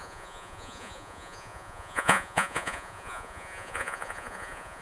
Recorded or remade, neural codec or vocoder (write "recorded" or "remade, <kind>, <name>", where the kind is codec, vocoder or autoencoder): remade, vocoder, Vocos